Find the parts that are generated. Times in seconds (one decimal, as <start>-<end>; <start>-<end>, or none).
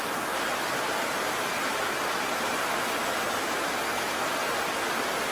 none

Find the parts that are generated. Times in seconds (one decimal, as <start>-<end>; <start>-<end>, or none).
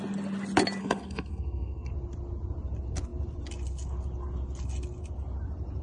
0.8-1.9